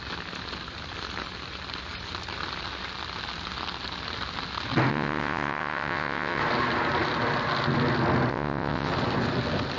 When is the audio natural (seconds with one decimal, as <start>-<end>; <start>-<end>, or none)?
0.0-4.9; 6.4-8.3; 8.9-9.8